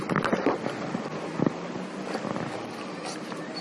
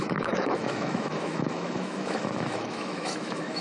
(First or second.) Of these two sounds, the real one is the first